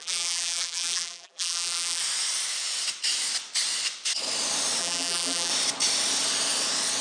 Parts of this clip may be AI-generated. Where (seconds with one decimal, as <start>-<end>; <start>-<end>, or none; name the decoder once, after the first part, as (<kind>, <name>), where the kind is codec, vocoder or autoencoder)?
0.0-2.0 (vocoder, BigVGAN v2); 4.8-5.5